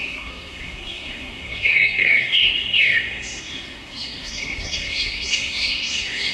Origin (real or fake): fake